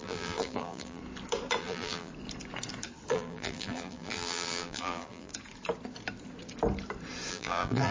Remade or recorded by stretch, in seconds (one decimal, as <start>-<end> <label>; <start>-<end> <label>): 0.0-1.0 remade; 1.0-1.6 recorded; 1.6-2.1 remade; 2.1-3.1 recorded; 3.1-5.3 remade; 5.3-7.3 recorded; 7.3-7.9 remade